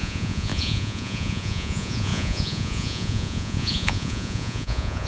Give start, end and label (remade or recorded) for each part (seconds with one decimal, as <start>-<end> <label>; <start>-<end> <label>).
0.0-5.1 remade